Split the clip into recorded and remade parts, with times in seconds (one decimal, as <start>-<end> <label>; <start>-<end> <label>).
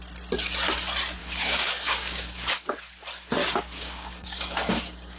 0.0-1.2 recorded; 1.2-2.5 remade; 2.5-3.4 recorded; 3.4-5.2 remade